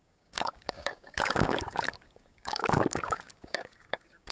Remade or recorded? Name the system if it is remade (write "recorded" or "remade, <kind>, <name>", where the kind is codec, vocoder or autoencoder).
remade, codec, DAC